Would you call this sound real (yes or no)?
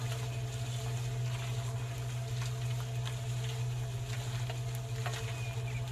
yes